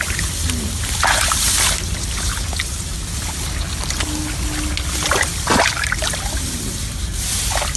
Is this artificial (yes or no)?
no